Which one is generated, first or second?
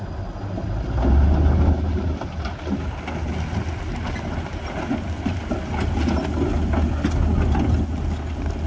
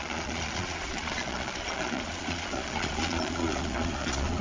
second